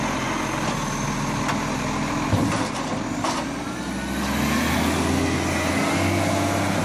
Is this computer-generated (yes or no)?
no